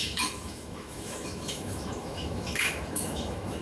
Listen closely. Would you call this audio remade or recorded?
remade